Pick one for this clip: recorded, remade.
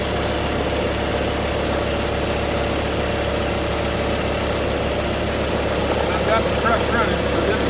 recorded